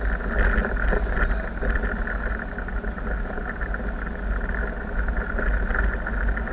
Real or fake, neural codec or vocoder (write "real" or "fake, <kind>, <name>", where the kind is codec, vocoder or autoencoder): real